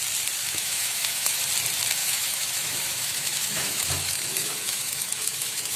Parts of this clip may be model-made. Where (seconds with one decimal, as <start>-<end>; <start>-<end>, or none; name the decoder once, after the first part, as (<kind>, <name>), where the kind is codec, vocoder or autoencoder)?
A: 0.4-1.4 (autoencoder, DAC-VAE); 2.0-5.8